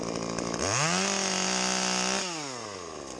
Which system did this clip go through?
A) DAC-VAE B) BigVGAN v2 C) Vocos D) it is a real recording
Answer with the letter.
D